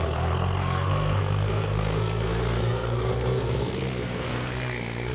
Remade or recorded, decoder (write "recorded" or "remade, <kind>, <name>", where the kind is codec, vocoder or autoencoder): remade, codec, SNAC